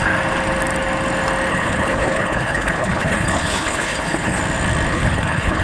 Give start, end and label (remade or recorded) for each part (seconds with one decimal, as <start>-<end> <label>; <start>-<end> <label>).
0.0-1.5 recorded; 1.5-4.4 remade; 4.4-4.9 recorded; 4.9-5.6 remade